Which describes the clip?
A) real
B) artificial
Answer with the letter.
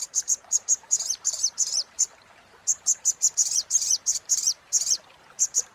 B